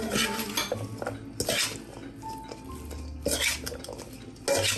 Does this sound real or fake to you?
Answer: real